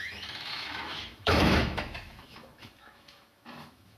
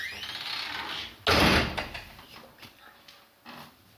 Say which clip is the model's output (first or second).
first